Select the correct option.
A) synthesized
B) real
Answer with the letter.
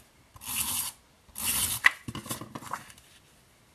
B